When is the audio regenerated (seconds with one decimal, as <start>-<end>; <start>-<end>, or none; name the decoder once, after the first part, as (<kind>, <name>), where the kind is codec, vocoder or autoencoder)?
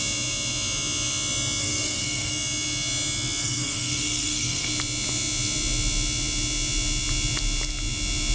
1.6-2.3 (codec, SNAC); 3.4-4.7